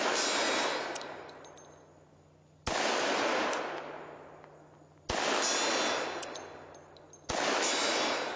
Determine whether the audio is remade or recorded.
recorded